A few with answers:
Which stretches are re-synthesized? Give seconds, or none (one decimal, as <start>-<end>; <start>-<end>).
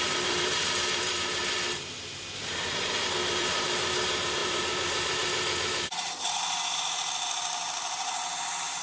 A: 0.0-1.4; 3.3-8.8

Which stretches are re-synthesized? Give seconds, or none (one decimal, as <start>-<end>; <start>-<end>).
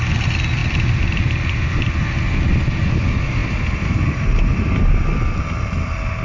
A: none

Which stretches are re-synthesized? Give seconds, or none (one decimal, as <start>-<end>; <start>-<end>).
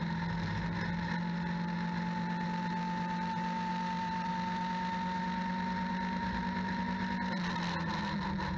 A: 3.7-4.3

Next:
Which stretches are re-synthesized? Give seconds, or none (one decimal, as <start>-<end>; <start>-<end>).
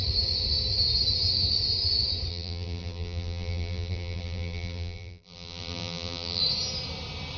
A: 2.3-6.4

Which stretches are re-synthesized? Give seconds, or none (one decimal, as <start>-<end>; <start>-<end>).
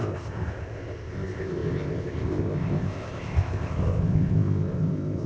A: 0.0-5.3